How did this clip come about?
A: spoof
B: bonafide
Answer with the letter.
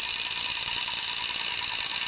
B